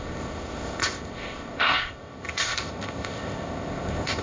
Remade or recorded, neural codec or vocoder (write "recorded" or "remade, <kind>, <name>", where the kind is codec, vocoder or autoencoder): remade, codec, ZipCodec